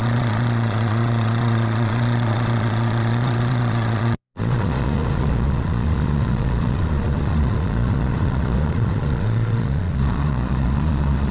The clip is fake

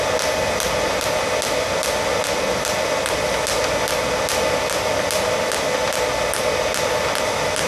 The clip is real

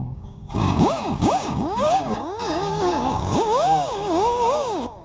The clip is fake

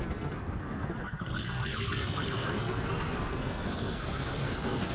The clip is fake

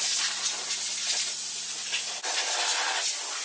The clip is real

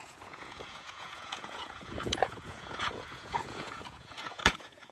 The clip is fake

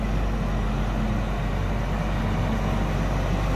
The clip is real